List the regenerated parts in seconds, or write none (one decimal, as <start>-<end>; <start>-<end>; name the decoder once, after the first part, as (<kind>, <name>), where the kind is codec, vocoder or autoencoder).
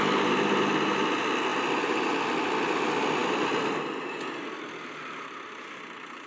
none